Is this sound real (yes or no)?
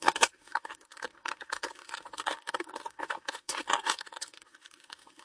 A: no